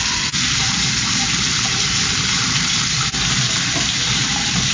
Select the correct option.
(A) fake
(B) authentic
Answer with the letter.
A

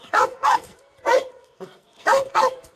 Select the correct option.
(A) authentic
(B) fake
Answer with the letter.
B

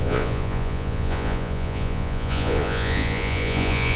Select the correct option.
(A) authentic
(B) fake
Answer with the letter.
B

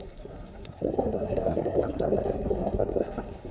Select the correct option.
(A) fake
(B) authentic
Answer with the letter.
A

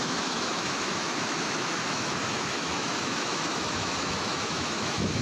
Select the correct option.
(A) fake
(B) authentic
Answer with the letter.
A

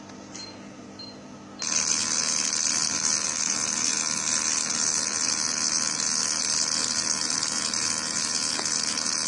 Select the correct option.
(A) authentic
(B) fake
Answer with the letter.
A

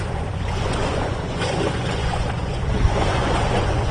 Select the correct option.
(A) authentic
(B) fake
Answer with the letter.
B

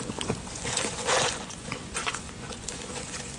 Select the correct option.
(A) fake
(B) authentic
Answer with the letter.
A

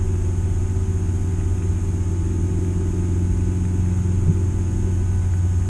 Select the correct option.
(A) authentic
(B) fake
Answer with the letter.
A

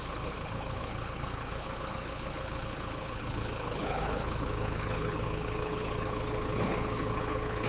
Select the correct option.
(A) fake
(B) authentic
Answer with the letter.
A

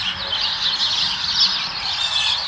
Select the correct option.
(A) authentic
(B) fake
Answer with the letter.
A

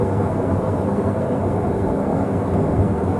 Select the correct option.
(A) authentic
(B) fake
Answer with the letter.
B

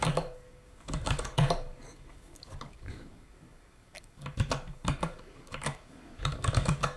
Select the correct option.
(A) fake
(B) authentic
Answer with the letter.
A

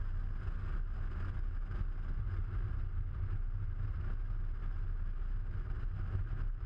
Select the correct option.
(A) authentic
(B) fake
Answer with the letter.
A